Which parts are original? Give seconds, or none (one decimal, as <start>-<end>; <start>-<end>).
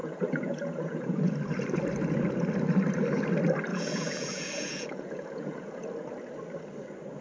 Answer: 1.3-3.7; 5.9-7.2